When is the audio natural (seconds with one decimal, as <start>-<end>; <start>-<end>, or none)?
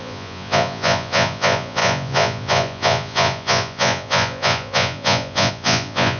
none